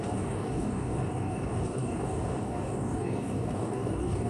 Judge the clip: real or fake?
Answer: fake